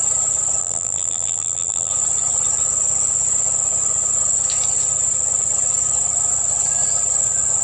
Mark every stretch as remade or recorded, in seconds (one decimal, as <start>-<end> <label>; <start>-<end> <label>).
0.0-0.6 recorded; 0.6-1.9 remade; 1.9-7.6 recorded